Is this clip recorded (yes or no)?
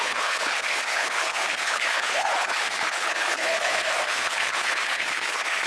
no